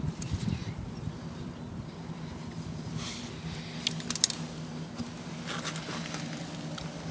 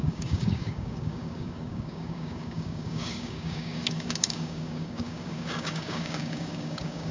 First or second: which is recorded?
first